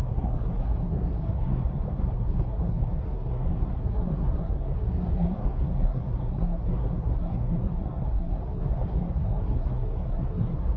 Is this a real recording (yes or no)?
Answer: no